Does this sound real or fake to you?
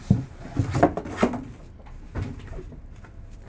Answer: real